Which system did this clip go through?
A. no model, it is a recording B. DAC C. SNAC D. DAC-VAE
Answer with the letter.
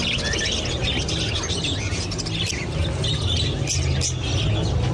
A